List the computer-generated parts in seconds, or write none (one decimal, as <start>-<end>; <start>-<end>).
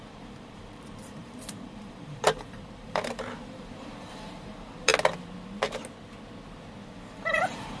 0.0-4.9; 7.1-7.8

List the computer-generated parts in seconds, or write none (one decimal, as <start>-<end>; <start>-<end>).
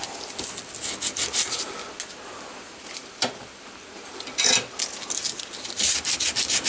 none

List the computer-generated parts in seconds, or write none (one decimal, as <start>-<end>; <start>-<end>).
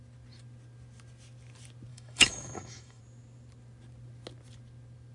1.9-3.0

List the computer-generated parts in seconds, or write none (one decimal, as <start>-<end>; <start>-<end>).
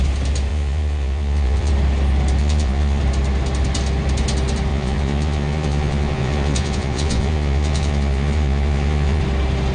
0.5-1.7; 2.4-3.0; 4.7-9.2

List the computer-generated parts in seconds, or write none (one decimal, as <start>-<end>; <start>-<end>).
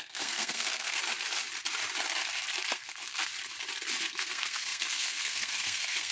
0.0-1.0; 2.7-3.3; 4.0-6.1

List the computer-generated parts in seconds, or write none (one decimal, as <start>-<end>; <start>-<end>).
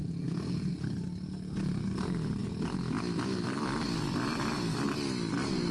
0.0-0.7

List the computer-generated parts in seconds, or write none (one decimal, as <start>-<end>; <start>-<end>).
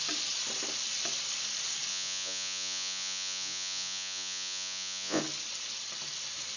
1.9-5.2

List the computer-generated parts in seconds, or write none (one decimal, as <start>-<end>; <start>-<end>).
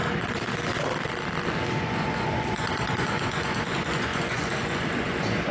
1.8-5.5